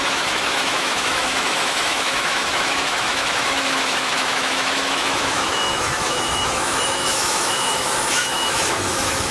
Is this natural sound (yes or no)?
no